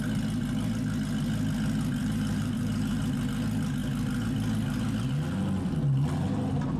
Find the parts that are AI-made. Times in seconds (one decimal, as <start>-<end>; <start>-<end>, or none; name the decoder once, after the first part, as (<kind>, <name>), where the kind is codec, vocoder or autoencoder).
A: 2.0-3.0 (vocoder, BigVGAN v2)